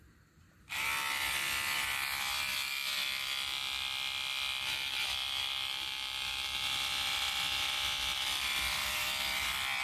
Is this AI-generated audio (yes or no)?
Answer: yes